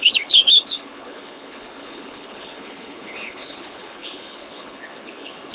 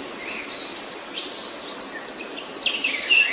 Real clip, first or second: second